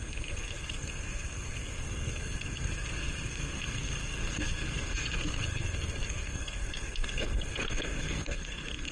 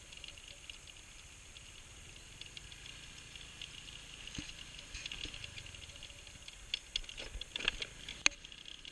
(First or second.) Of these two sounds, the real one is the second